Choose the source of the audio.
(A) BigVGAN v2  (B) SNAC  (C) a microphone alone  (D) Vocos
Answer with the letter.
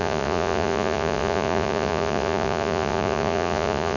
D